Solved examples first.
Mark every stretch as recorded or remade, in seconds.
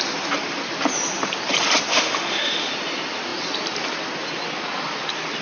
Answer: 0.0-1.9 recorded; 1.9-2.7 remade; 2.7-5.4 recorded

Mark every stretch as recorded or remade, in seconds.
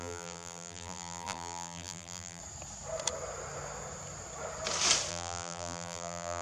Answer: 0.0-2.4 remade; 2.4-5.1 recorded; 5.1-6.4 remade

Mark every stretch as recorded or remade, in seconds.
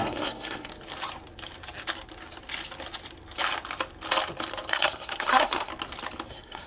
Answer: 0.0-0.7 remade; 0.7-4.7 recorded; 4.7-5.7 remade; 5.7-6.3 recorded; 6.3-6.7 remade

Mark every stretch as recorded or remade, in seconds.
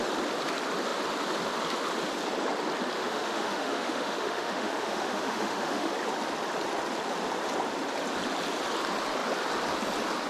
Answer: 0.0-3.0 recorded; 3.0-5.9 remade; 5.9-10.3 recorded